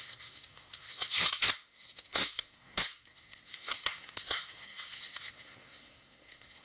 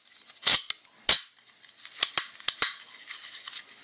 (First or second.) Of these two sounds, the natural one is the second